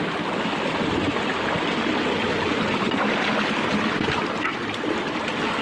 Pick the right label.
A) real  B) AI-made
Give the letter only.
A